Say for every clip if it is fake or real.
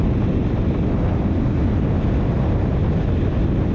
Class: real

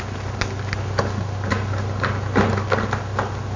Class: real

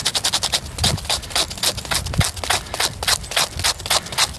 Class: real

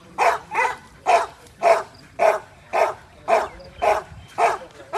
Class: fake